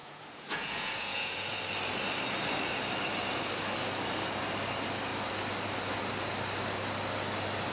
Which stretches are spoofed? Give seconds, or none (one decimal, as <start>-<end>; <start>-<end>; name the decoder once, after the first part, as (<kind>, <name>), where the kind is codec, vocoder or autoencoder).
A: 0.0-1.6 (vocoder, Vocos)